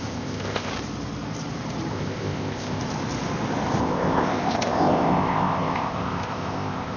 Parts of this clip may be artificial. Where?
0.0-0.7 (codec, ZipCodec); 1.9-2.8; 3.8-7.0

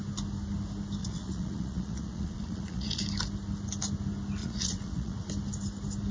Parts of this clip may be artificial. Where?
1.0-3.0 (vocoder, Vocos); 4.4-5.3

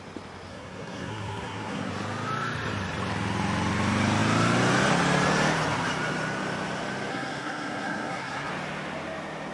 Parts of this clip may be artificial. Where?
0.5-1.9 (codec, SNAC); 7.1-8.5

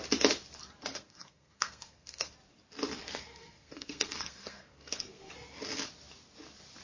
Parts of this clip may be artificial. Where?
0.9-2.3 (codec, SNAC); 3.0-5.3

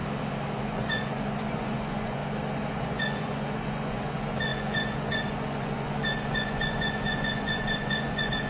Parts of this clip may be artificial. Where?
0.6-2.2 (vocoder, Vocos); 2.7-8.5

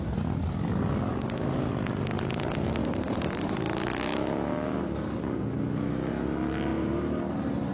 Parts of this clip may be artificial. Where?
1.1-1.7 (vocoder, BigVGAN v2); 2.8-3.6; 6.7-7.2

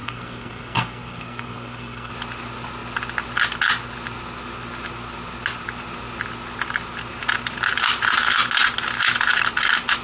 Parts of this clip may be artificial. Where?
0.0-2.1 (codec, SNAC)